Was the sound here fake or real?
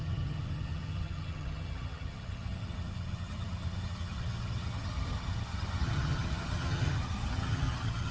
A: fake